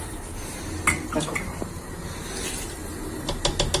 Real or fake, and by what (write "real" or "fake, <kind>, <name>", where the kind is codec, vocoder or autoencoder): real